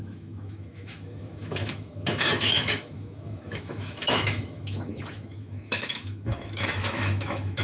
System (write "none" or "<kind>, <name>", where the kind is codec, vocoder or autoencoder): autoencoder, DAC-VAE